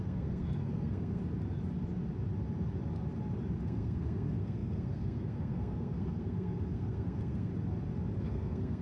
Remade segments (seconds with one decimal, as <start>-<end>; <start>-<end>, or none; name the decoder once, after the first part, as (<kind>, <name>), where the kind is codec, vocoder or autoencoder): 0.0-1.2 (codec, SNAC); 3.6-7.5; 8.2-8.8